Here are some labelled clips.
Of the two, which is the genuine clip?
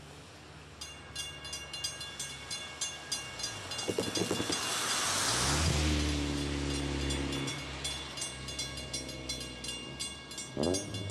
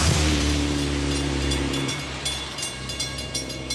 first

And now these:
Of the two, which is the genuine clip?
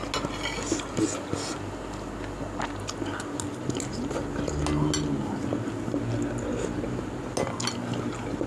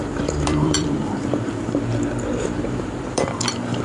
first